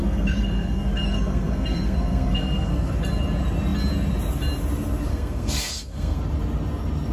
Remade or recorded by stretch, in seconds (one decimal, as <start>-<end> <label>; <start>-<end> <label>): 0.0-2.9 remade; 2.9-5.1 recorded; 5.1-6.2 remade; 6.2-7.1 recorded

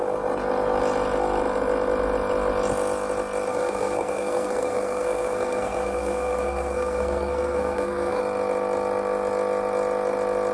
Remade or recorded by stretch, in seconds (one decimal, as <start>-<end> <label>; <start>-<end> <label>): 0.0-3.5 recorded; 3.5-8.2 remade; 8.2-10.5 recorded